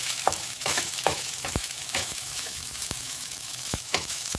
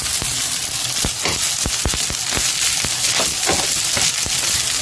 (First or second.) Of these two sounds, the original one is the second